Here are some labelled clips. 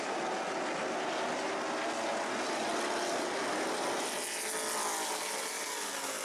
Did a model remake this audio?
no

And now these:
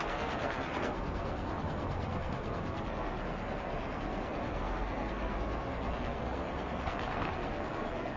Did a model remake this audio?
yes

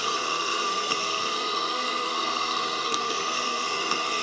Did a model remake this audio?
yes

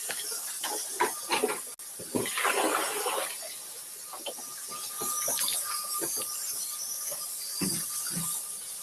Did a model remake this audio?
no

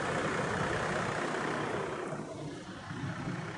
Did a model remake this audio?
no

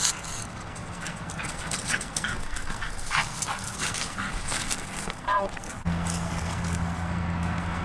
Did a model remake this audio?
yes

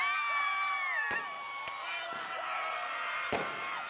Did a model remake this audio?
no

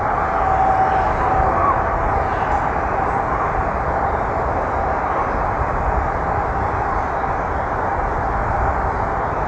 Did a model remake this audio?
no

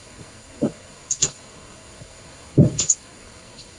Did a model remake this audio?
yes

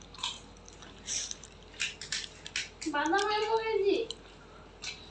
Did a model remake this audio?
no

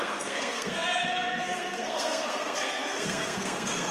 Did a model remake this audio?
yes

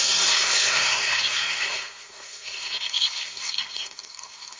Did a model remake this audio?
yes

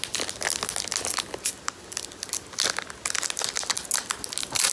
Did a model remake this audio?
no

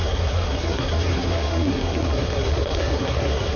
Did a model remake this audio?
yes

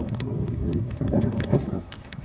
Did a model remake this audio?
yes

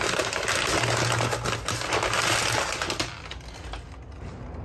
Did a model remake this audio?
no